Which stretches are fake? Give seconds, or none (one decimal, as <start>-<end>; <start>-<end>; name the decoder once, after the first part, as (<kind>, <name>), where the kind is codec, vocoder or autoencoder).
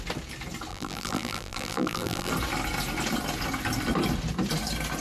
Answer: 0.7-2.3 (vocoder, BigVGAN v2)